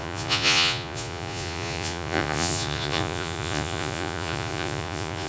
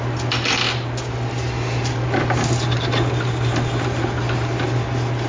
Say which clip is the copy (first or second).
first